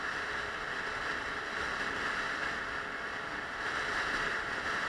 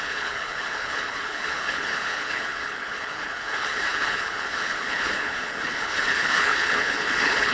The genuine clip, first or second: first